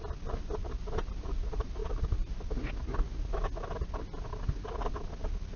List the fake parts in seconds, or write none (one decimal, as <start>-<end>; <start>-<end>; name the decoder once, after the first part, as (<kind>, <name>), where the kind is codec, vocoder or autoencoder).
none